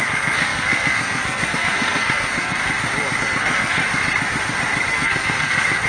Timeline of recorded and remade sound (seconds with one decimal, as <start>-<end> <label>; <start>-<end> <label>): 0.0-2.6 remade; 2.6-3.2 recorded; 3.2-3.8 remade; 3.8-4.9 recorded; 4.9-5.9 remade